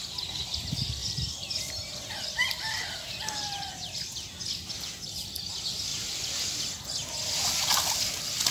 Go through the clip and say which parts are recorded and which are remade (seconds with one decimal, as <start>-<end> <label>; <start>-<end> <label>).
0.0-1.0 recorded; 1.0-3.7 remade; 3.7-8.5 recorded